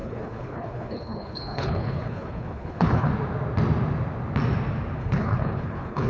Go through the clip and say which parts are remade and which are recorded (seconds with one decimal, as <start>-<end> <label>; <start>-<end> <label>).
0.0-3.1 remade; 3.1-5.0 recorded; 5.0-6.1 remade